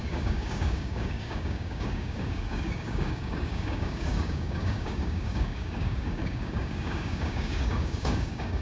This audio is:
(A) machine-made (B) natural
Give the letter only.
A